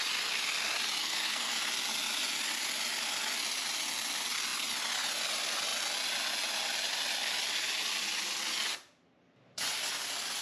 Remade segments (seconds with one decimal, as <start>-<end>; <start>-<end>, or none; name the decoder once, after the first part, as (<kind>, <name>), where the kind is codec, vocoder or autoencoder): 1.0-1.5 (codec, SNAC)